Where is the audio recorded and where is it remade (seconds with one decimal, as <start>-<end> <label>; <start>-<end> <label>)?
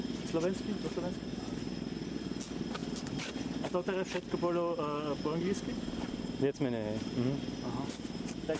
0.0-2.8 recorded; 2.8-3.3 remade; 3.3-8.6 recorded